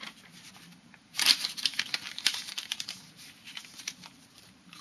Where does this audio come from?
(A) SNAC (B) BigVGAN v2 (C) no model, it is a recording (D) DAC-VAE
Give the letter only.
B